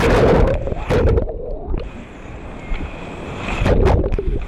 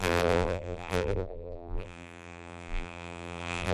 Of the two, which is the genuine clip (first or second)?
first